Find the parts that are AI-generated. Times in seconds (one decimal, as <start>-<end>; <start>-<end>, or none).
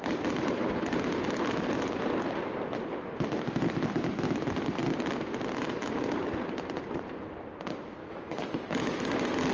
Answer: 8.0-9.0